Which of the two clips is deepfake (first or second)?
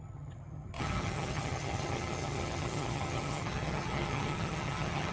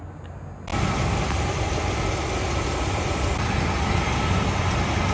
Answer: first